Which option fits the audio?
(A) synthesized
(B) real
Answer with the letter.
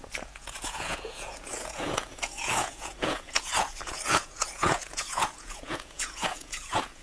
A